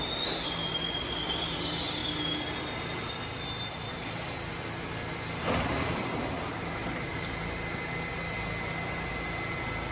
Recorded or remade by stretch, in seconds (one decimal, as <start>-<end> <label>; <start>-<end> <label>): 0.0-9.9 recorded